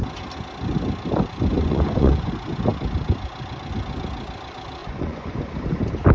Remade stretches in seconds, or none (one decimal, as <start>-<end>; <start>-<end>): 1.5-2.3; 4.8-5.4